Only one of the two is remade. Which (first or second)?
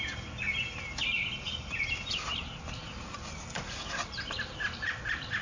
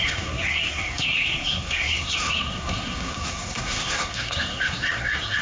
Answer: second